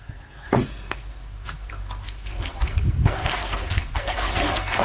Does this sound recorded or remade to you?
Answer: remade